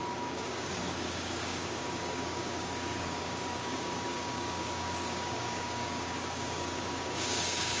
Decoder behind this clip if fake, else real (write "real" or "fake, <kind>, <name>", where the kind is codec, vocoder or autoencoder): fake, codec, DAC